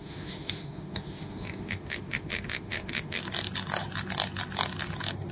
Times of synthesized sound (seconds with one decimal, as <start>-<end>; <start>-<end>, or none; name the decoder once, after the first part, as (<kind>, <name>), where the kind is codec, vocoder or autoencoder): 0.0-3.2 (autoencoder, DAC-VAE)